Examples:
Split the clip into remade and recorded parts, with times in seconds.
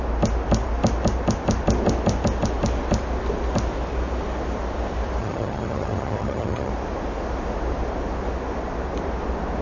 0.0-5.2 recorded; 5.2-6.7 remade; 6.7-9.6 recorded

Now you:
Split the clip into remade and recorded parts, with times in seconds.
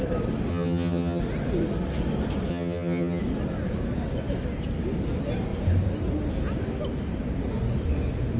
0.0-0.5 recorded; 0.5-1.2 remade; 1.2-2.5 recorded; 2.5-3.2 remade; 3.2-8.4 recorded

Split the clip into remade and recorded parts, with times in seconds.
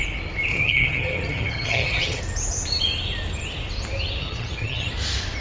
0.0-0.5 recorded; 0.5-2.2 remade; 2.2-4.2 recorded; 4.2-4.9 remade; 4.9-5.4 recorded